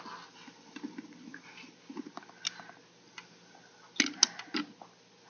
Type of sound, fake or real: real